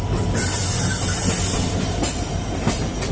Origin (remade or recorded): recorded